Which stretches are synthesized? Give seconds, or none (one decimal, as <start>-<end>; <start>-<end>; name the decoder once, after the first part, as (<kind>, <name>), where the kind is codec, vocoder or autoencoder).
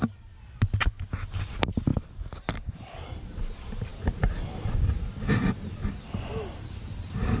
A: none